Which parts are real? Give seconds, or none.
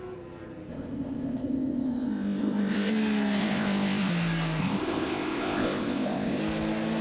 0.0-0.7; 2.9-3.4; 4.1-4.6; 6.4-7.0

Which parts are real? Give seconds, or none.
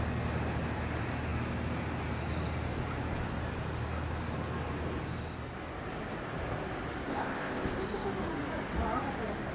0.0-7.1; 7.8-9.5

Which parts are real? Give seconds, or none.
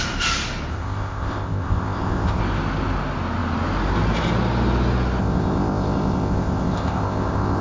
0.0-0.7; 2.4-5.2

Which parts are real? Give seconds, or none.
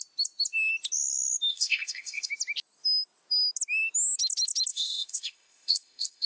0.0-1.5; 2.3-4.7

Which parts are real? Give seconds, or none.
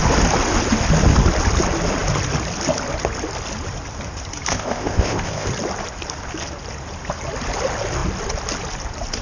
0.0-4.5; 5.5-9.2